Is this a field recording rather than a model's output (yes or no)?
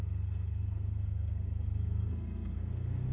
no